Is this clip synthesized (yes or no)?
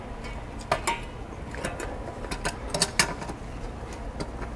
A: no